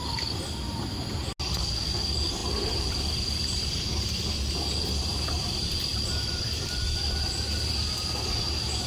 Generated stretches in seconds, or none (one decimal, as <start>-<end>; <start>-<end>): none